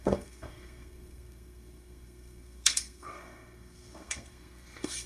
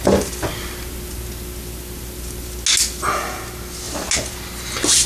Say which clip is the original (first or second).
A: second